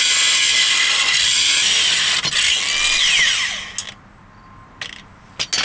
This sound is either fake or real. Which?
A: real